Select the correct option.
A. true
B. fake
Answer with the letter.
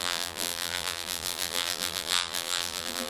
B